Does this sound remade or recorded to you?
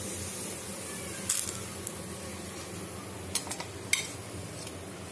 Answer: recorded